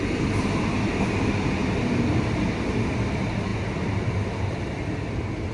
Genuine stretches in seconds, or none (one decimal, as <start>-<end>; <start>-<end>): 0.0-5.5